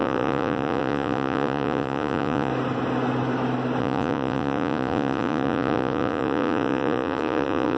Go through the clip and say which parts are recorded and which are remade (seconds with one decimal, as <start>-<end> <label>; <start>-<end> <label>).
0.0-2.5 remade; 2.5-3.8 recorded; 3.8-7.8 remade